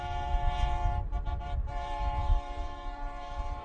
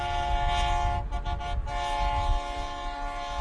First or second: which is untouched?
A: second